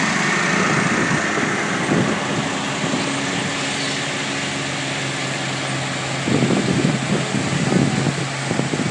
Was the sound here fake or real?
real